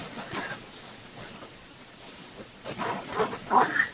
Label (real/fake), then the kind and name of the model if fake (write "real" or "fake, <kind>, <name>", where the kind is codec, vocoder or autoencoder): fake, vocoder, Vocos